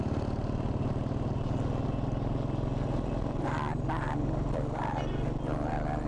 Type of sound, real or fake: real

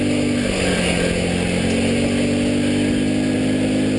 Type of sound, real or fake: real